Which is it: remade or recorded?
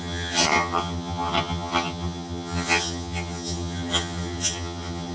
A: remade